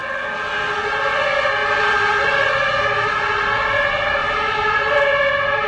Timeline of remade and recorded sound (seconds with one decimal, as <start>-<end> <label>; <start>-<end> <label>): 0.0-1.6 recorded; 1.6-2.5 remade; 2.5-4.2 recorded; 4.2-5.3 remade; 5.3-5.7 recorded